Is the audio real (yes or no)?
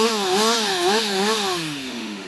no